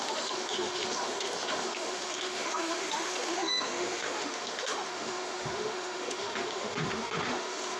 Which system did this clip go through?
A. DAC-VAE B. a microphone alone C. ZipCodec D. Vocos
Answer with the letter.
A